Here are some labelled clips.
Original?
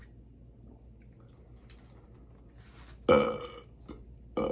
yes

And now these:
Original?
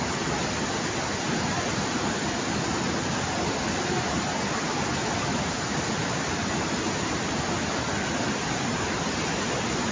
yes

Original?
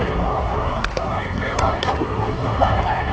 no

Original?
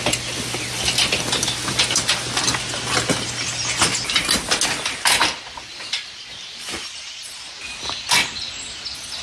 yes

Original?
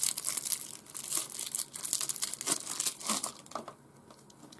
yes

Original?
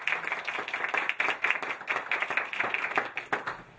yes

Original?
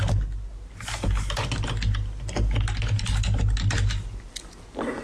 yes